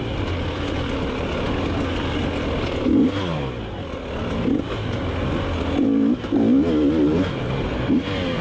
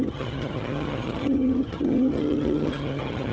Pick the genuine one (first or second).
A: first